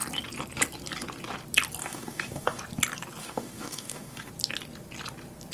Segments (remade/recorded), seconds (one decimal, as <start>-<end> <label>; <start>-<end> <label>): 0.0-1.8 recorded; 1.8-2.6 remade; 2.6-3.2 recorded; 3.2-4.3 remade; 4.3-5.5 recorded